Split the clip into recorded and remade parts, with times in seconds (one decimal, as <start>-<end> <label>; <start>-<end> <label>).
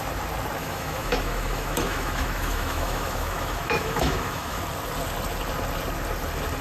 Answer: 0.0-0.6 recorded; 0.6-4.6 remade; 4.6-6.6 recorded